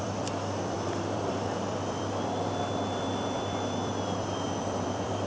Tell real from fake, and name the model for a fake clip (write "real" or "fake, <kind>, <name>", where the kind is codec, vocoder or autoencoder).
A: fake, vocoder, BigVGAN v2